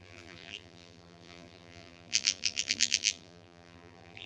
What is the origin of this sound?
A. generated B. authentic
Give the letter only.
A